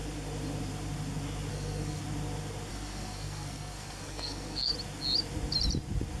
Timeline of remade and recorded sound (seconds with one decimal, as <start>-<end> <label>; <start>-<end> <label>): 0.0-1.5 recorded; 1.5-2.0 remade; 2.0-2.7 recorded; 2.7-4.7 remade; 4.7-6.2 recorded